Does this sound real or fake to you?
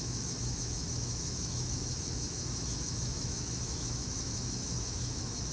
fake